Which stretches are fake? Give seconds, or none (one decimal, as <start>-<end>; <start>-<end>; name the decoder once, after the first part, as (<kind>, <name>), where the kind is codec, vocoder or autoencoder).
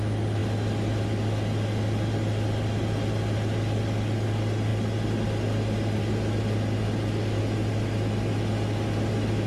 4.7-7.4 (vocoder, BigVGAN v2)